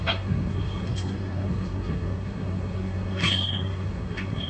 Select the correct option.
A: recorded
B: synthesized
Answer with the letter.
B